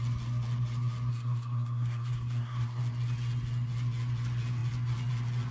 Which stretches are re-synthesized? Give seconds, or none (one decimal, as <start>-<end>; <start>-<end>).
1.1-2.8